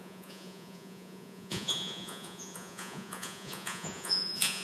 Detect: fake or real fake